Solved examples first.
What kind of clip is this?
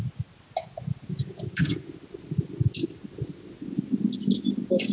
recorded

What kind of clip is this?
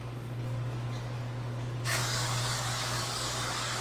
remade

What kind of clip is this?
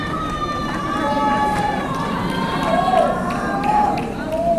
remade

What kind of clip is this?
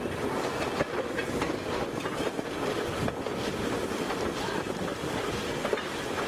recorded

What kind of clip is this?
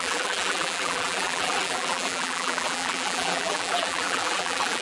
remade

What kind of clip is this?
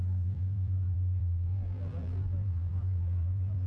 remade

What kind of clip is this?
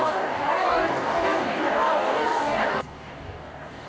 remade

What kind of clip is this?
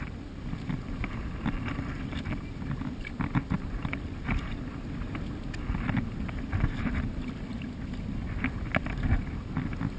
recorded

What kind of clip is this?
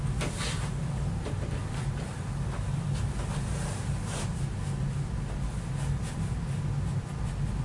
recorded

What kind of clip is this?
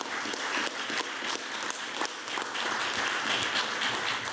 recorded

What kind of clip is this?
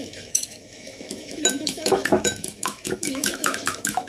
remade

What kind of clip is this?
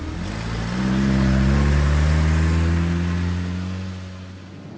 recorded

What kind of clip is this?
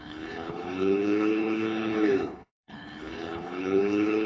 remade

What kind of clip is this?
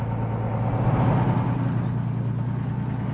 recorded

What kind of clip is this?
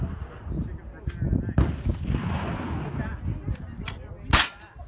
recorded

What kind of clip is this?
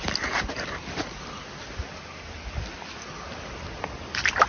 recorded